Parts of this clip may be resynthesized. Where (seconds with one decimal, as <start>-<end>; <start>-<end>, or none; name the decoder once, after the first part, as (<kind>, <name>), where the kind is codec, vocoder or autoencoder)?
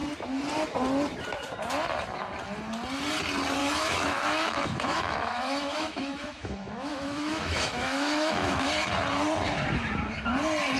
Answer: 3.6-8.7 (autoencoder, DAC-VAE)